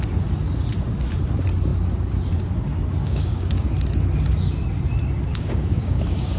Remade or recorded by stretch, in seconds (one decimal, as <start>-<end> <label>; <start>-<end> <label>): 0.0-3.0 recorded; 3.0-3.7 remade; 3.7-5.3 recorded; 5.3-6.4 remade